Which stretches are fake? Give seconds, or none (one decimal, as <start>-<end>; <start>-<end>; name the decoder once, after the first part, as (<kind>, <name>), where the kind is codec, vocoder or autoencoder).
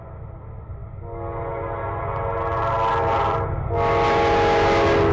none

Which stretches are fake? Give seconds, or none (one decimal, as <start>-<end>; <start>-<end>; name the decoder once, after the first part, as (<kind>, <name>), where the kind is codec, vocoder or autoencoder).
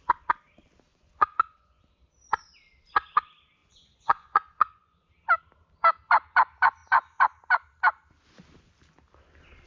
0.9-1.8 (vocoder, Vocos); 3.6-5.1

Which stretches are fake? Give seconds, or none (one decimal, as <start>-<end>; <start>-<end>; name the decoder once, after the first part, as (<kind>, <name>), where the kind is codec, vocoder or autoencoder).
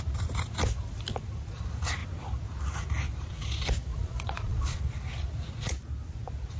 3.9-4.8 (vocoder, Vocos)